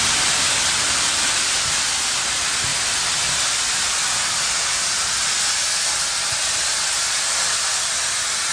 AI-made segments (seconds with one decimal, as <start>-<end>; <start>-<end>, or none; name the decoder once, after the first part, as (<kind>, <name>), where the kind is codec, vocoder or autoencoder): none